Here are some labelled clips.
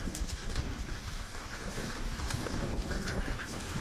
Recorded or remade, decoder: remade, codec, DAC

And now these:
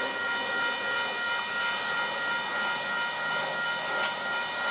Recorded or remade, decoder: recorded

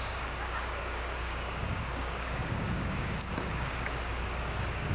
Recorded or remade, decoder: remade, codec, DAC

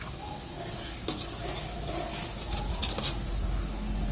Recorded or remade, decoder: recorded